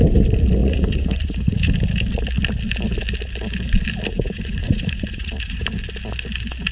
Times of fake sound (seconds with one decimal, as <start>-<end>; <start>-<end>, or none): 0.6-1.7; 4.1-5.6